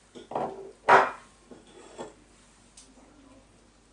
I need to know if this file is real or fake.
real